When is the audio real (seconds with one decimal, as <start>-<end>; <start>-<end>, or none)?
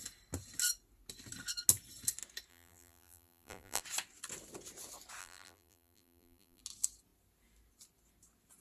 0.0-2.5; 3.8-5.2; 6.6-8.6